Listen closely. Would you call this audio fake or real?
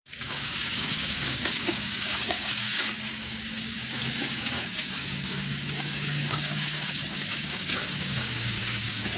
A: fake